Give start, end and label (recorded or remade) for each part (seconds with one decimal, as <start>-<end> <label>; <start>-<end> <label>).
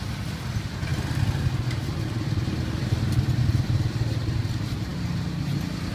0.0-5.9 recorded